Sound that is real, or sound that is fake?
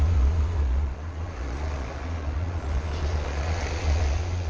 fake